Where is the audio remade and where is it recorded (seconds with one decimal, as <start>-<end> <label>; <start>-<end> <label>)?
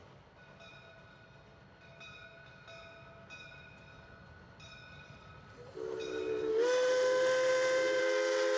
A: 0.0-6.5 recorded; 6.5-8.0 remade; 8.0-8.6 recorded